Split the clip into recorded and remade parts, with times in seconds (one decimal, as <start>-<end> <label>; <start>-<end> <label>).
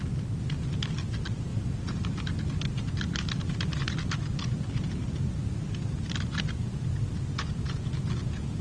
0.0-8.6 recorded